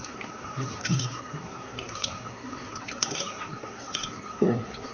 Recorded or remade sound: remade